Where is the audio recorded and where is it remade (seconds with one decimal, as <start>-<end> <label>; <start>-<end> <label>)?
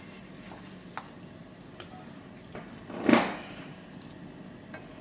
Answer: 0.0-5.0 recorded